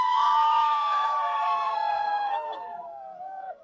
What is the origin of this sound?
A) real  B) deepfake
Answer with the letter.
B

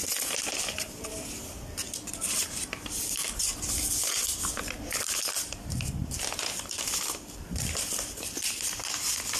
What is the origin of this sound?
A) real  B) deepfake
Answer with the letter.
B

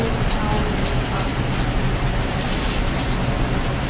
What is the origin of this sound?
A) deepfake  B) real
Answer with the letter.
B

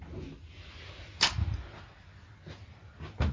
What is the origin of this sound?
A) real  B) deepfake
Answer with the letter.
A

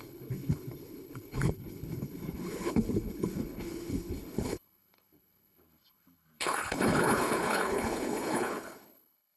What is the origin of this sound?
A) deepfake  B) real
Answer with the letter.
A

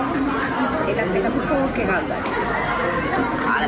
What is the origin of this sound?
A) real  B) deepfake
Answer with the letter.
A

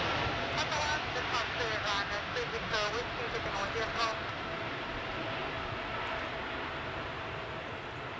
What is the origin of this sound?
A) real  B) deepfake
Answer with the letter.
A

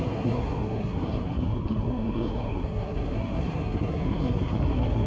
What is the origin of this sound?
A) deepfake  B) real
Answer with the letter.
A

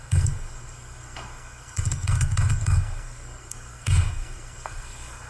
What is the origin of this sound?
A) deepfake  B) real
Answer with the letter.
A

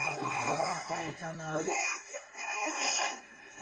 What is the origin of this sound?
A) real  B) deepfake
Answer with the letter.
B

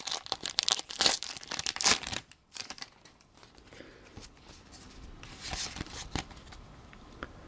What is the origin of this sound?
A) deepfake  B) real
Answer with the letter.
A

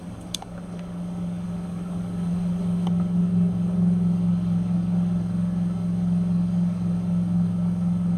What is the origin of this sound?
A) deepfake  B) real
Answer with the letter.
A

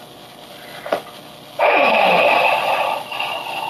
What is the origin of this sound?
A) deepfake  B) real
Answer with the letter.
B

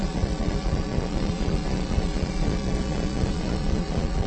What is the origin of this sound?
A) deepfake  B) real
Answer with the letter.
A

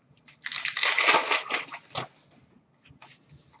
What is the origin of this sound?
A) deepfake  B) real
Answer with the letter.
B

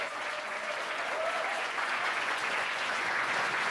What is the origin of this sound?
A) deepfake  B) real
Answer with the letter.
A